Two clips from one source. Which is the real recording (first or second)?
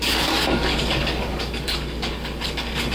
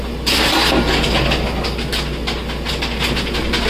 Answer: second